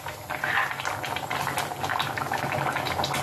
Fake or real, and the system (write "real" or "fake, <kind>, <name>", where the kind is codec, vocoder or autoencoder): real